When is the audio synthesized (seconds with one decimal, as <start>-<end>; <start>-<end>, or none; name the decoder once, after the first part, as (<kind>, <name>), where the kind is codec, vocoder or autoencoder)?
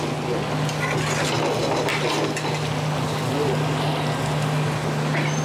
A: none